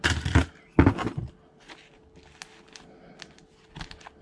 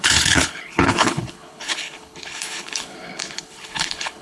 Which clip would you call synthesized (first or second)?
second